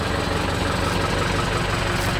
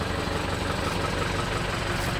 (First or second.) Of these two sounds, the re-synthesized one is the second